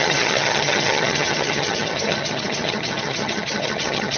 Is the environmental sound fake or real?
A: fake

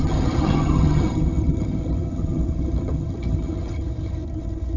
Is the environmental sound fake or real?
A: fake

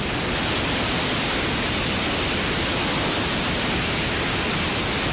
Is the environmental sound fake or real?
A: real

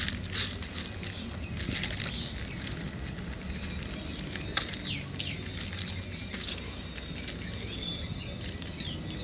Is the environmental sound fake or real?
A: real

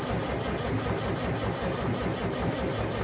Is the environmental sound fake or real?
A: real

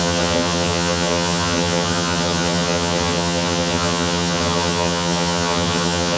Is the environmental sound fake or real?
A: fake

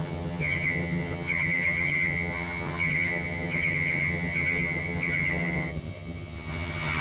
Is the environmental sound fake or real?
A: fake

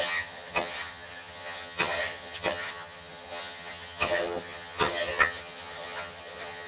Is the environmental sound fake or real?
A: fake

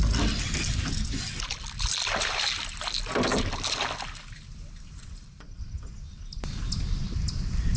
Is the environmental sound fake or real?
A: real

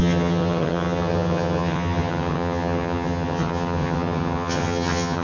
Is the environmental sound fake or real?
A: fake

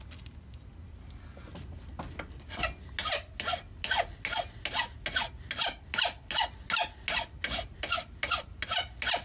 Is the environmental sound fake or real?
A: real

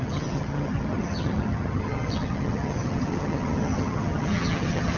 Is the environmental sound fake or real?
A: fake